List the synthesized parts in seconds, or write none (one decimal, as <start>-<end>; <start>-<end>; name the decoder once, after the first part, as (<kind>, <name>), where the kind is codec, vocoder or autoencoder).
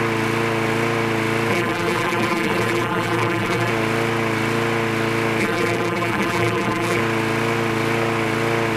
1.5-3.7 (vocoder, BigVGAN v2); 5.4-7.0